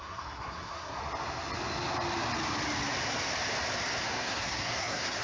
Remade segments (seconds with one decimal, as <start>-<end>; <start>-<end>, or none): 0.0-1.0; 4.0-5.2